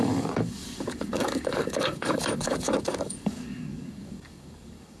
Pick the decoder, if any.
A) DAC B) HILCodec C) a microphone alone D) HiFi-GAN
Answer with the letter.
A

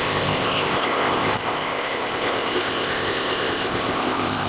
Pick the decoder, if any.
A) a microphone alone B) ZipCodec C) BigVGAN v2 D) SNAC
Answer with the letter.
B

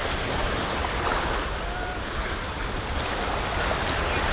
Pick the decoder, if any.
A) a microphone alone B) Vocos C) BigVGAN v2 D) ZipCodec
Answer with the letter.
A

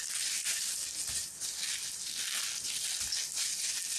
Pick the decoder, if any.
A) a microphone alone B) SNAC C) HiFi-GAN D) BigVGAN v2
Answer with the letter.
A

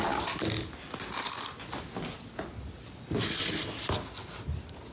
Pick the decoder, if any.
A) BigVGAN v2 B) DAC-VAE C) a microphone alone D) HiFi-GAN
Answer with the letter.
C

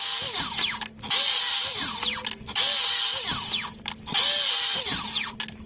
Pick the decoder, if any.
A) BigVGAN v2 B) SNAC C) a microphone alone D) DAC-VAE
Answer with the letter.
C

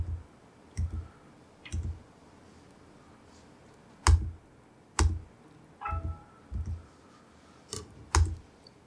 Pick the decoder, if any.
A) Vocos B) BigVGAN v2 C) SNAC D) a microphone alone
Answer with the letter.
D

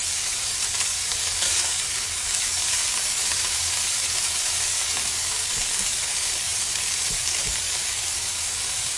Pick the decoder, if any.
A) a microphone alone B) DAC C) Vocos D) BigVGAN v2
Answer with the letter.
B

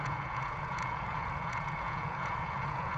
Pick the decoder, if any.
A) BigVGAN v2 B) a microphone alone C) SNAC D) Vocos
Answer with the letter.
D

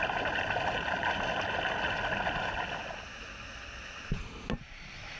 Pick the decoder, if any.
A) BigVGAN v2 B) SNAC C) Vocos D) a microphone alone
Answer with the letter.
D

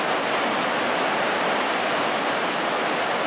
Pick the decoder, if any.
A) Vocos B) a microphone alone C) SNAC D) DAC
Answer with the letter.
B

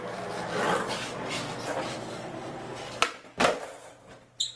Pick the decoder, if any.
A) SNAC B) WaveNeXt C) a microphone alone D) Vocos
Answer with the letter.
C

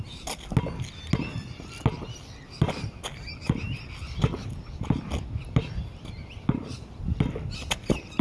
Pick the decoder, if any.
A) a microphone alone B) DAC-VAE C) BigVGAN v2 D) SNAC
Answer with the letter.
A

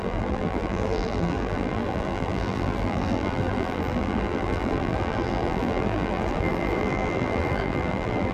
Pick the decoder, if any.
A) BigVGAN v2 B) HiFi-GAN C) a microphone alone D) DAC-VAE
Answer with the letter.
A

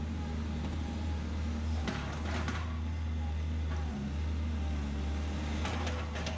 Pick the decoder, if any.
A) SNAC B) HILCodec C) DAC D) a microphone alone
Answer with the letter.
D